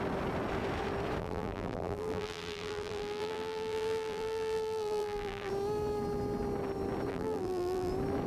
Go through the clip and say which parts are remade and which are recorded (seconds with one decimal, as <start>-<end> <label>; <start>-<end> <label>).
0.0-1.2 recorded; 1.2-5.5 remade; 5.5-7.1 recorded; 7.1-7.9 remade; 7.9-8.3 recorded